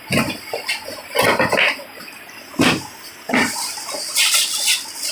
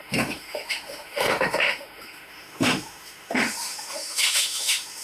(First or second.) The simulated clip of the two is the second